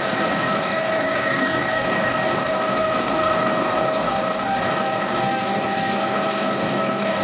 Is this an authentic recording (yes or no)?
no